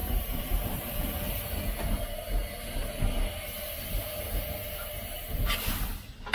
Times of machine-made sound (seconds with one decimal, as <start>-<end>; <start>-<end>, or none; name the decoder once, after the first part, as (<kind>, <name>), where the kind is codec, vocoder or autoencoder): 0.0-1.6 (vocoder, BigVGAN v2)